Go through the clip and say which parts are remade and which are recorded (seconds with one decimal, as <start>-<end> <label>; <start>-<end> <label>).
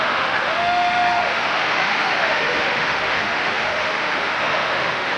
0.0-5.2 remade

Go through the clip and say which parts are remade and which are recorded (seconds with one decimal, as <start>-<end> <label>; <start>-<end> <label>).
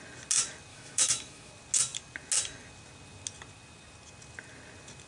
0.0-0.7 recorded; 0.7-1.5 remade; 1.5-5.1 recorded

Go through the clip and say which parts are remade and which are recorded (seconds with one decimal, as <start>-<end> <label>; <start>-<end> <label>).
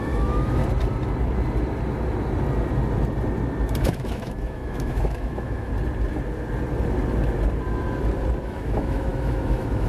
0.0-0.6 remade; 0.6-3.8 recorded; 3.8-5.7 remade; 5.7-8.4 recorded; 8.4-9.9 remade